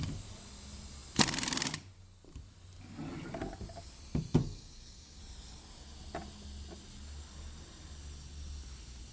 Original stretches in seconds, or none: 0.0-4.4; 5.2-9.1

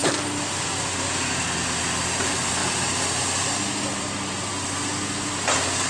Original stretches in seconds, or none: 0.0-5.9